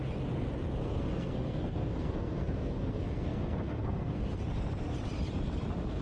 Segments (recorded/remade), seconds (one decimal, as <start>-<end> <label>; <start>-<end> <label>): 0.0-0.8 recorded; 0.8-4.4 remade; 4.4-6.0 recorded